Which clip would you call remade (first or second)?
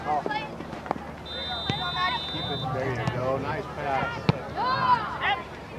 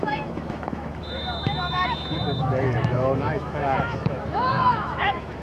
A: second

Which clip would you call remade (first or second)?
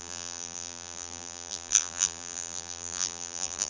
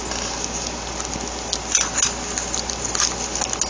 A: first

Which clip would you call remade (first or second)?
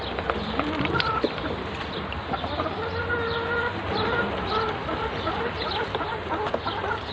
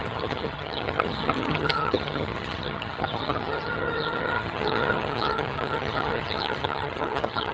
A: second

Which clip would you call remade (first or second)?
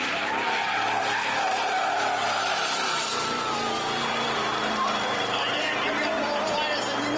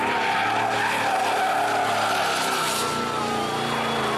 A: first